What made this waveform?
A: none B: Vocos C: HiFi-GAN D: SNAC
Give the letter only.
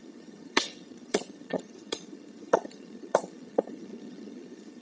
C